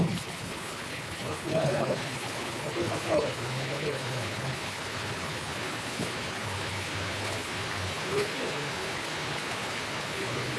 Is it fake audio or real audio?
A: fake